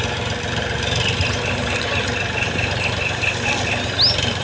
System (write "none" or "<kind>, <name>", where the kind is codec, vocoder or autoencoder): none